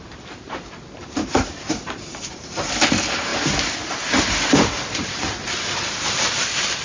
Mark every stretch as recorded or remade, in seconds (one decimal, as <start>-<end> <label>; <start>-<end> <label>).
0.0-3.3 remade; 3.3-4.2 recorded; 4.2-6.8 remade